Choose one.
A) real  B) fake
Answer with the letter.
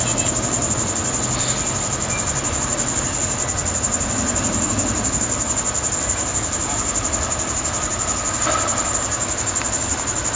A